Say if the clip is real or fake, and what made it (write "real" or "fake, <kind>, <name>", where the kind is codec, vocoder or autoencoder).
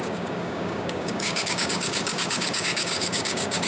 fake, codec, DAC